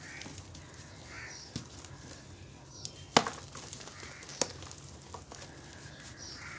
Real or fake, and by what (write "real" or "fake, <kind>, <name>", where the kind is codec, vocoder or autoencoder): real